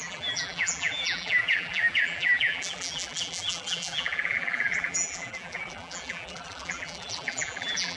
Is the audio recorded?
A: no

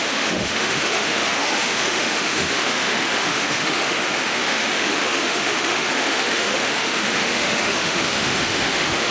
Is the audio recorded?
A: no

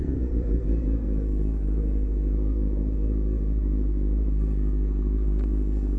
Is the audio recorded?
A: no